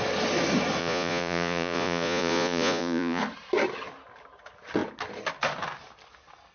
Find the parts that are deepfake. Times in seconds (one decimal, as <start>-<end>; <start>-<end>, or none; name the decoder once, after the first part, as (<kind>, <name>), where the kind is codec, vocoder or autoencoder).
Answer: 0.8-3.2 (vocoder, Vocos)